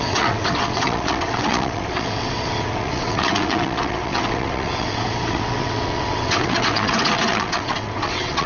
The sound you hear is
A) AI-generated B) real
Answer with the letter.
A